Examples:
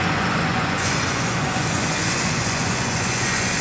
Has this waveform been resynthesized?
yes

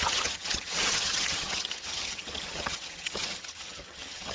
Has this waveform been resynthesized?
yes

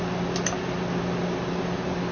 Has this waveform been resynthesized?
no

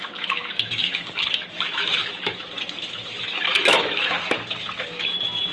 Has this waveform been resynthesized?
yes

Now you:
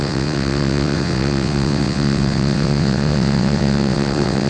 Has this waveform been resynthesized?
yes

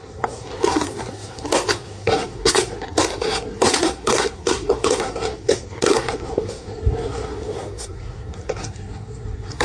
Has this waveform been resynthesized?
yes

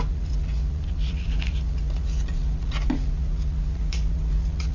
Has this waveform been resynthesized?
yes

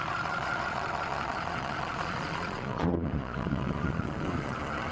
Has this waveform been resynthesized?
yes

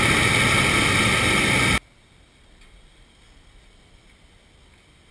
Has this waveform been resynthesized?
no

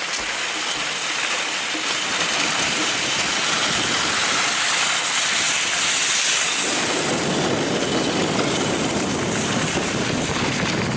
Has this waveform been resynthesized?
no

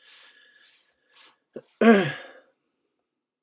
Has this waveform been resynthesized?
no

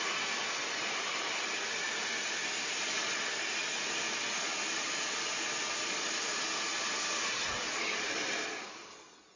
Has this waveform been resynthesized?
no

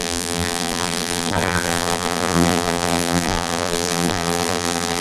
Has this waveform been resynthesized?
yes